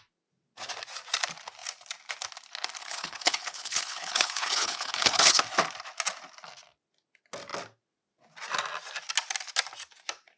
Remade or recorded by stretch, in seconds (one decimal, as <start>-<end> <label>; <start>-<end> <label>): 0.0-2.8 recorded; 2.8-5.4 remade; 5.4-10.4 recorded